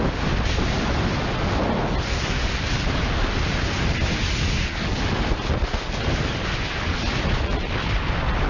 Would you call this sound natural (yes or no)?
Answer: yes